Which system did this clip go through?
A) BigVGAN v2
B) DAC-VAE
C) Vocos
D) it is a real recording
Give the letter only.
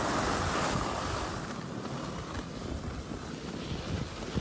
D